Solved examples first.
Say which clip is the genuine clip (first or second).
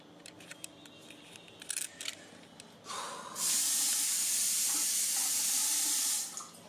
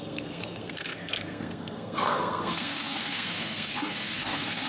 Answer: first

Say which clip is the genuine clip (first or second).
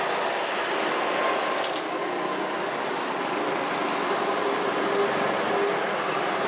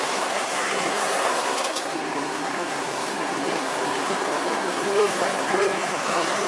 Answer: first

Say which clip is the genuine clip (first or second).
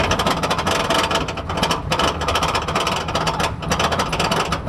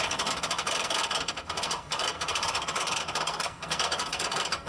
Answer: first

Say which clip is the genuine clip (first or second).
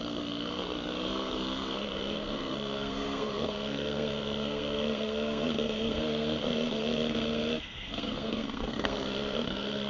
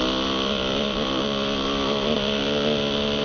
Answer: second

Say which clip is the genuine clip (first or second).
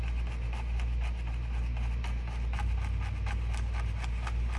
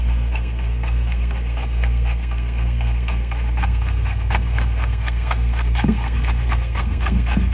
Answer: first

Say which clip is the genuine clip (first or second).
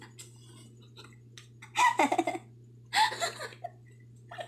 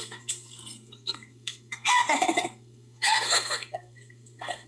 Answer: first